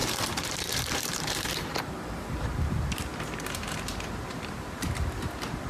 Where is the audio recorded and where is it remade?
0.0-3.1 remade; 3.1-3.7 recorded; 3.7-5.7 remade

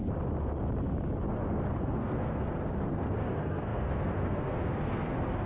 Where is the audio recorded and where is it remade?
0.0-1.8 recorded; 1.8-5.5 remade

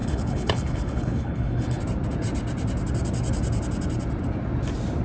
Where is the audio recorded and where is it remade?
0.0-1.8 remade; 1.8-5.0 recorded

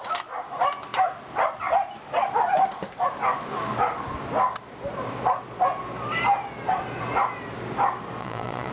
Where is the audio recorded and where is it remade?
0.0-8.2 recorded; 8.2-8.7 remade

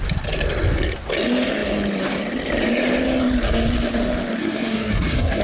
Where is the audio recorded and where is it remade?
0.0-4.4 recorded; 4.4-5.4 remade

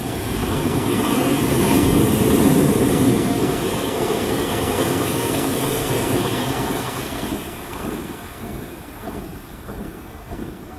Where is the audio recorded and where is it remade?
0.0-2.0 remade; 2.0-2.9 recorded; 2.9-10.8 remade

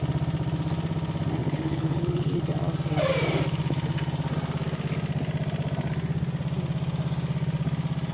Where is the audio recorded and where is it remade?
0.0-1.4 recorded; 1.4-2.4 remade; 2.4-8.1 recorded